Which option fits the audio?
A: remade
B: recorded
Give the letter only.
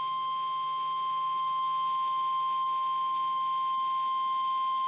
A